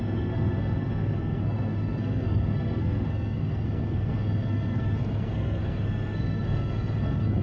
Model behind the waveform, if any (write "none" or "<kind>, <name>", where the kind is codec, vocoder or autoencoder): codec, SNAC